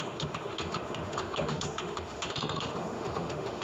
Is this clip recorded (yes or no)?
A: no